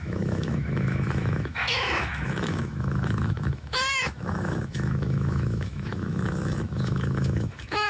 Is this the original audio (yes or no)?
no